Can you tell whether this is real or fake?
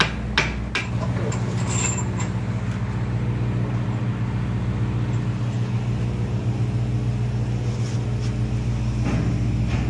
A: real